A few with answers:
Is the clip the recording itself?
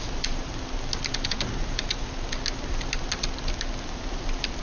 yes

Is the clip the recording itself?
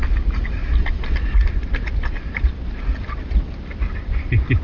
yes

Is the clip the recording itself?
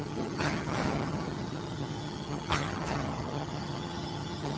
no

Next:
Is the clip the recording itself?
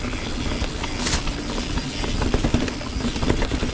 yes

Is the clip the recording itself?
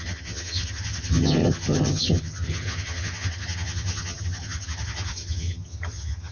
no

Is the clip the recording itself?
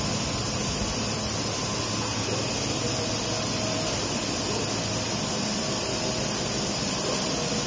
yes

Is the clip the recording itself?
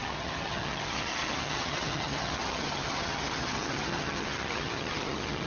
no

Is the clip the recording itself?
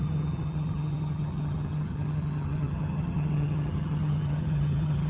no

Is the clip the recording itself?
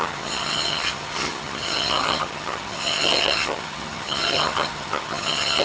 no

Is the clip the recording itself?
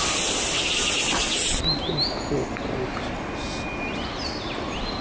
yes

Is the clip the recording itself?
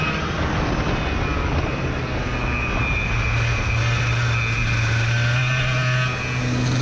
yes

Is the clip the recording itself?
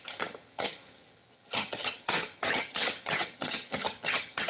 no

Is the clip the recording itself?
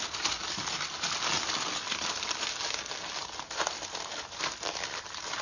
yes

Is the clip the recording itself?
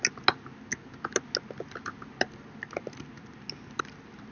yes